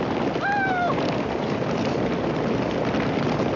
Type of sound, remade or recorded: recorded